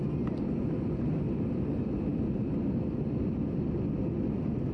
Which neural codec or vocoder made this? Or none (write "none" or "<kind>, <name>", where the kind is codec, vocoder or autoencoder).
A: none